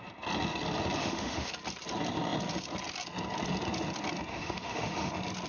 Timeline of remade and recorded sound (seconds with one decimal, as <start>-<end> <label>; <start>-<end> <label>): 0.0-1.0 recorded; 1.0-1.5 remade; 1.5-4.3 recorded; 4.3-5.1 remade; 5.1-5.5 recorded